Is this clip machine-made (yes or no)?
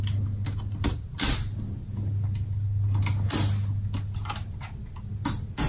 no